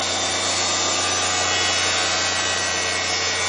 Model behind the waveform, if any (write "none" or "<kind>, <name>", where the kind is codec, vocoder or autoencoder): none